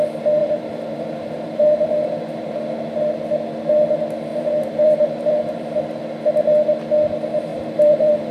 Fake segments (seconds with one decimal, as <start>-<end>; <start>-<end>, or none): 0.4-2.5; 4.3-6.0; 7.5-8.3